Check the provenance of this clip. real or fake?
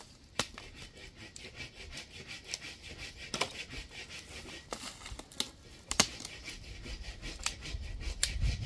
real